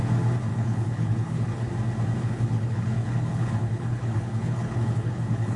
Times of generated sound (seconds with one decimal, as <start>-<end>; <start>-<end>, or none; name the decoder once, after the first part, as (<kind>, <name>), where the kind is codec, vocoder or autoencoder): 0.5-1.7 (codec, HILCodec); 2.2-5.6